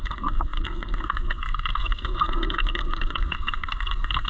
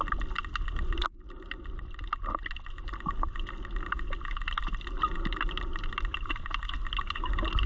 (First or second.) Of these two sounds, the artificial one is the first